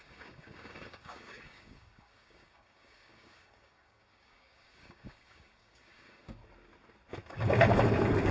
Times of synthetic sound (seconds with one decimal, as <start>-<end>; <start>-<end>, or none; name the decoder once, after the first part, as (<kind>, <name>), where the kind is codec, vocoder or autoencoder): 0.0-6.4 (codec, DAC)

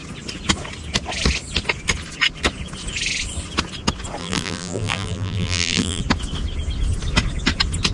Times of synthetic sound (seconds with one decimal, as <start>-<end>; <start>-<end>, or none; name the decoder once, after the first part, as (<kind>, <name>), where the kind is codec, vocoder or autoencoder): 4.2-6.0 (vocoder, BigVGAN v2)

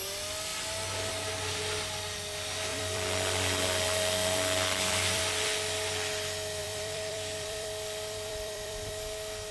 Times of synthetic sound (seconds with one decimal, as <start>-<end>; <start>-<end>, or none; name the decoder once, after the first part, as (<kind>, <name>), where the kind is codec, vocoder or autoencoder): 2.7-5.2 (vocoder, BigVGAN v2); 6.6-8.9

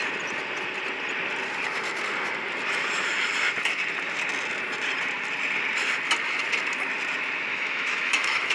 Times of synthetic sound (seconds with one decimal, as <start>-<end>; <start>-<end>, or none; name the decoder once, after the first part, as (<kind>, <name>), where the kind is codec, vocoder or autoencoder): 7.5-8.5 (autoencoder, DAC-VAE)

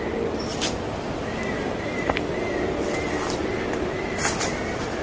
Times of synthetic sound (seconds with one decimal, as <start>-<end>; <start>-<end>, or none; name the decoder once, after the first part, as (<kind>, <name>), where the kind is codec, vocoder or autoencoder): none